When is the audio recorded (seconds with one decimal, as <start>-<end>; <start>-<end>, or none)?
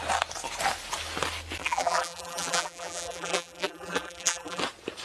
0.0-1.6; 4.6-5.0